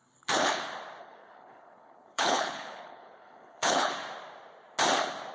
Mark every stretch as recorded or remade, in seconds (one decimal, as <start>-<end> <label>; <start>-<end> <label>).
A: 0.0-0.6 remade; 0.6-1.0 recorded; 1.0-3.9 remade; 3.9-5.3 recorded